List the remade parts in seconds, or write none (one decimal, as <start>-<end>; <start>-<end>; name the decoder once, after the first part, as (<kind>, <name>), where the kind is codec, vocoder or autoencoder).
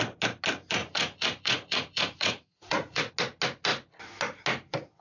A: 0.8-3.1 (vocoder, Vocos)